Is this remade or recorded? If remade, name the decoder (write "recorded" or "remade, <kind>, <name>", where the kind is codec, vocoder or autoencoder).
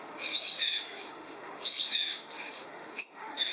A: remade, autoencoder, DAC-VAE